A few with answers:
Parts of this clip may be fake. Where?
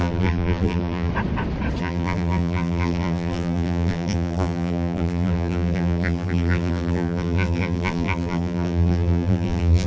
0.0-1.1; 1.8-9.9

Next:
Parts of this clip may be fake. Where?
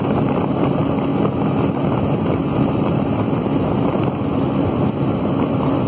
0.0-1.1; 1.9-5.9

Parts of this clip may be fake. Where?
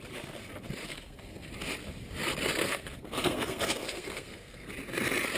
0.8-1.5; 2.6-4.7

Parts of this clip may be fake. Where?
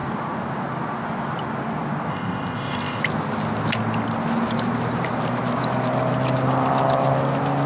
2.1-3.0